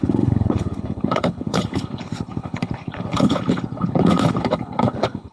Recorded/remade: remade